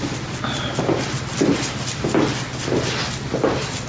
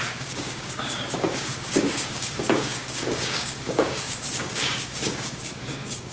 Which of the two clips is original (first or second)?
first